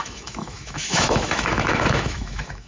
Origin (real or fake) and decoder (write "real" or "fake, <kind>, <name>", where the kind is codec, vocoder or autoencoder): fake, autoencoder, DAC-VAE